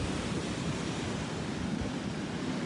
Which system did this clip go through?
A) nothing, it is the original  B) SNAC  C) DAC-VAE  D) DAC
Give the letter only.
A